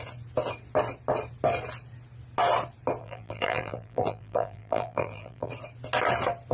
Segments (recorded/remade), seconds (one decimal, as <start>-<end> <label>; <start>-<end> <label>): 0.0-3.0 recorded; 3.0-5.5 remade; 5.5-6.5 recorded